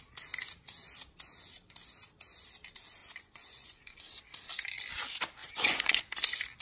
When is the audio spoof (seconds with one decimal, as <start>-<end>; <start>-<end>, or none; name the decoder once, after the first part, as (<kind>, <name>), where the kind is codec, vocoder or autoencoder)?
3.0-4.0 (vocoder, Vocos); 5.4-6.0